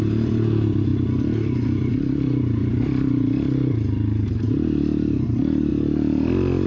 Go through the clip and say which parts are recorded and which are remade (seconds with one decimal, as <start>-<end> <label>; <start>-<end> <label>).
0.0-0.9 remade; 0.9-1.9 recorded; 1.9-5.7 remade; 5.7-6.7 recorded